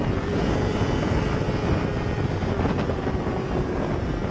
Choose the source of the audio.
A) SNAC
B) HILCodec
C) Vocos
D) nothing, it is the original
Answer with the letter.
D